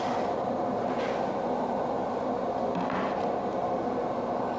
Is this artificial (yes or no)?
no